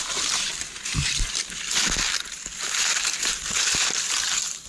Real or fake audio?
real